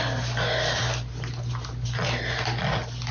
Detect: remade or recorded recorded